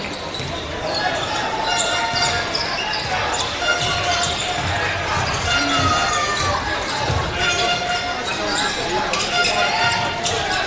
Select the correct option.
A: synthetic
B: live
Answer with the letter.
B